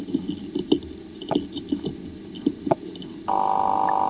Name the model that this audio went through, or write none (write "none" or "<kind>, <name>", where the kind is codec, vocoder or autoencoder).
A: none